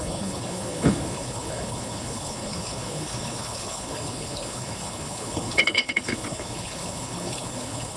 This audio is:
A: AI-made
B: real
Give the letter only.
A